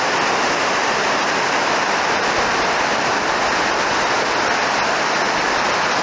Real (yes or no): yes